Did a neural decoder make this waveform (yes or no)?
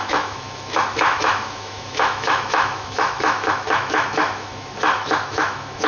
yes